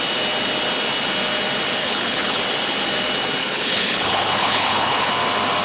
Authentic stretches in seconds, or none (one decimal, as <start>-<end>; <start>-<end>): 0.0-1.8; 2.4-3.4; 5.1-5.6